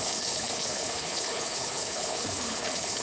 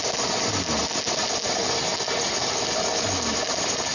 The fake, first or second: first